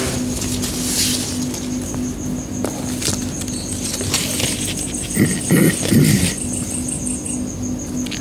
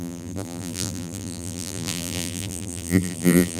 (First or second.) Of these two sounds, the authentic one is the first